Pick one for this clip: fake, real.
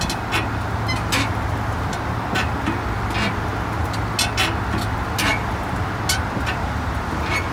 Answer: real